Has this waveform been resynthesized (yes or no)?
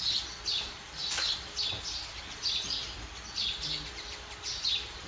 no